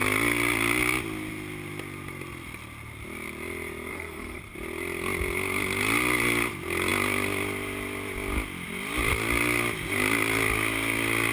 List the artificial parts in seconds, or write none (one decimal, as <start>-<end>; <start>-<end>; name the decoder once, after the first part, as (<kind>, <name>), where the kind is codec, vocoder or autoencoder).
3.9-4.4 (codec, SNAC)